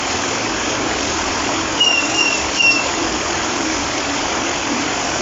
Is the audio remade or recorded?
remade